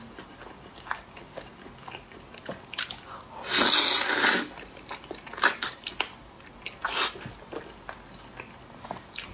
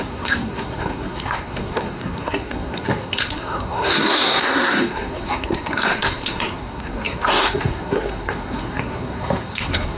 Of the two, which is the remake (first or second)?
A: second